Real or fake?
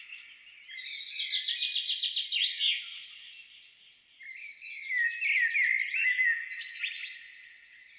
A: real